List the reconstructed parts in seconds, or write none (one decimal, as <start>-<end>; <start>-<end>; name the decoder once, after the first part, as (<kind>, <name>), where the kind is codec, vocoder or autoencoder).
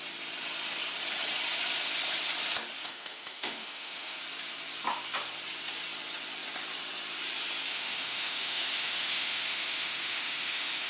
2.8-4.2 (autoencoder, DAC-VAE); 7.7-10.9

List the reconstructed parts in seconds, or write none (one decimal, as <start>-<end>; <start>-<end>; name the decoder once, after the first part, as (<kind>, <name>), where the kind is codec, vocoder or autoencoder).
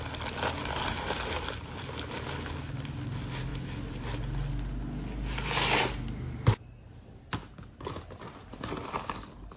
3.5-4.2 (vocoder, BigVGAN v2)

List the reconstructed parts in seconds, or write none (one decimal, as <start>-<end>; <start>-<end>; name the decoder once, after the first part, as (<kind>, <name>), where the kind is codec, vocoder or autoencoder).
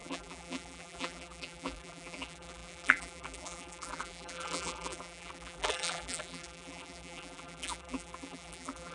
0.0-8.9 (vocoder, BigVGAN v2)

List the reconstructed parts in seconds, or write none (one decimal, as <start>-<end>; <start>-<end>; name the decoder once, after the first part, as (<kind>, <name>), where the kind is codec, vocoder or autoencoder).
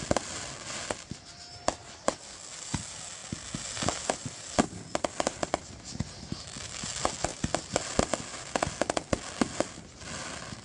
none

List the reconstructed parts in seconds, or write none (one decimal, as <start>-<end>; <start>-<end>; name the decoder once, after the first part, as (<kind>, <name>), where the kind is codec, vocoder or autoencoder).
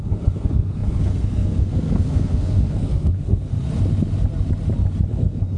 0.0-3.5 (codec, SNAC); 5.1-5.6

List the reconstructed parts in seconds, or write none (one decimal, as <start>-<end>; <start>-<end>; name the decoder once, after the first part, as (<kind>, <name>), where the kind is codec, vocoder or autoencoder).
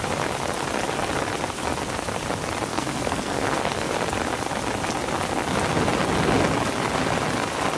2.7-3.9 (codec, SNAC)